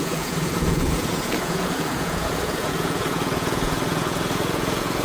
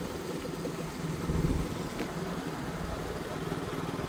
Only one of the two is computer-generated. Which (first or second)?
first